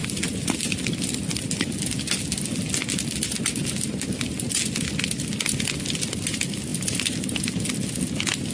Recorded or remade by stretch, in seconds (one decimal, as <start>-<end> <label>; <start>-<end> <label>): 0.0-6.7 recorded; 6.7-7.5 remade; 7.5-8.5 recorded